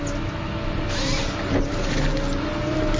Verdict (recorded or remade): recorded